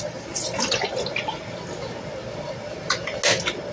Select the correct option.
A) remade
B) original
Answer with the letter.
B